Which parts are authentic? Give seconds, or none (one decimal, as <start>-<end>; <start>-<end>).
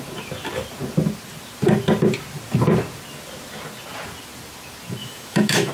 0.0-5.0